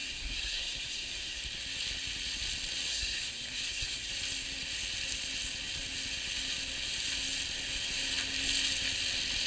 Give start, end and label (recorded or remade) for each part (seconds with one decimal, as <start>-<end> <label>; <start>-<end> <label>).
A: 0.0-1.4 remade; 1.4-2.9 recorded; 2.9-4.1 remade; 4.1-9.5 recorded